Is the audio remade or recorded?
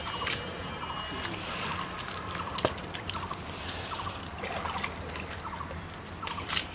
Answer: recorded